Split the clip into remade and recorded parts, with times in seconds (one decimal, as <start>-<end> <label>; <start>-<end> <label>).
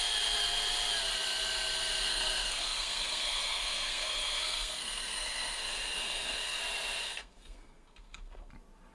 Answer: 0.0-2.1 recorded; 2.1-6.6 remade; 6.6-7.0 recorded; 7.0-8.5 remade; 8.5-8.9 recorded